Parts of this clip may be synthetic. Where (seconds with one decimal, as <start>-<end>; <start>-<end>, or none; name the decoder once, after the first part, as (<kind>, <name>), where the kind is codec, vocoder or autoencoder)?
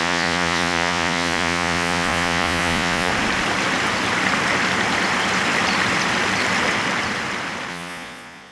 0.0-3.1 (vocoder, Vocos); 7.7-8.5